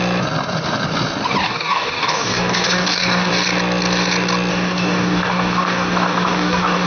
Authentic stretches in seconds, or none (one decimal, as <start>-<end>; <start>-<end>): 0.0-1.4; 3.3-4.5